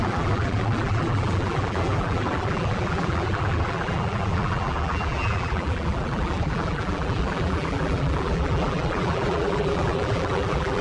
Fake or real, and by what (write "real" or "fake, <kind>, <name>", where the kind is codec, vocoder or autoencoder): fake, vocoder, BigVGAN v2